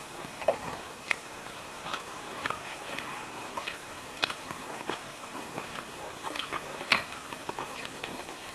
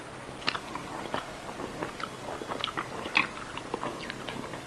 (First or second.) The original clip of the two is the second